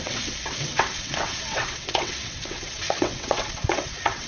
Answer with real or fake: fake